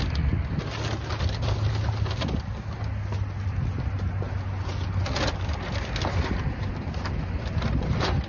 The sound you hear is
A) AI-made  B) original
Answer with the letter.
B